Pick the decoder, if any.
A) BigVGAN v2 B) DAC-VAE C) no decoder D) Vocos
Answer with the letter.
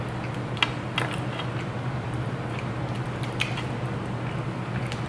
C